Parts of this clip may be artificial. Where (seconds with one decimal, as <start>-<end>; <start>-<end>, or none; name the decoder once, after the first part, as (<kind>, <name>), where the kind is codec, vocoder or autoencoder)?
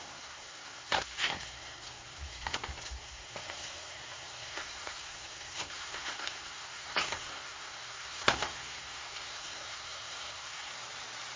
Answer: 0.0-10.7 (codec, SNAC)